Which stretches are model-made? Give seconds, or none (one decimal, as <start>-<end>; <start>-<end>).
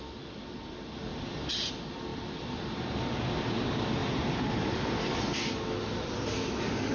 2.1-2.8; 4.0-5.5